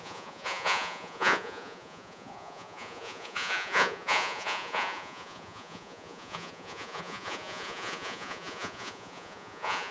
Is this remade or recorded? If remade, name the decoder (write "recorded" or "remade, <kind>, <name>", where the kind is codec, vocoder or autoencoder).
remade, vocoder, Vocos